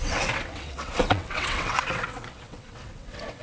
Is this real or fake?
fake